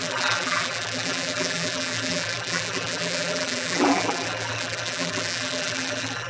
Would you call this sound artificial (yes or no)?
yes